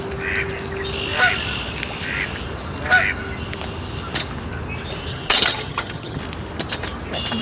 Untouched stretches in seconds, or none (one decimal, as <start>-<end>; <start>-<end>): 0.0-5.1; 6.2-7.4